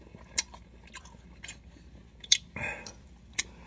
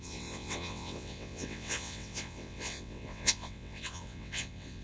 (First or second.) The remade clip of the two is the second